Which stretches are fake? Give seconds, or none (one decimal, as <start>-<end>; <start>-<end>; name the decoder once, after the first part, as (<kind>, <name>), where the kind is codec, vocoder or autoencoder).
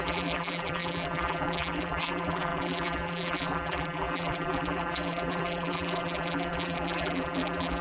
0.0-7.8 (vocoder, BigVGAN v2)